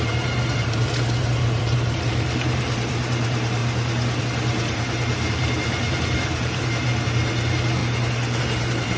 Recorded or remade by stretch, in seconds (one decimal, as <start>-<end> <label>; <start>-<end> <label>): 0.0-3.6 remade; 3.6-4.2 recorded; 4.2-7.8 remade; 7.8-8.4 recorded; 8.4-9.0 remade